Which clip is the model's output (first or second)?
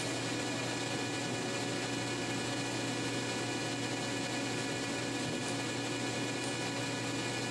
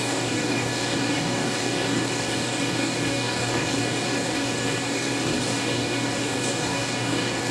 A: second